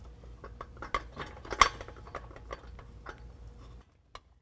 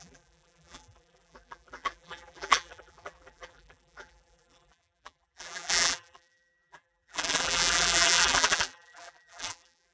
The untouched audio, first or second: first